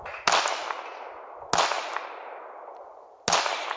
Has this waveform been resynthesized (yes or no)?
no